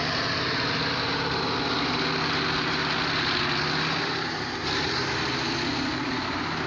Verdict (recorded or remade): recorded